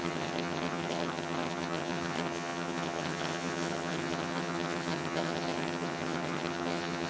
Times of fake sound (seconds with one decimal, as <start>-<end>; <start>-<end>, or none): 0.0-7.1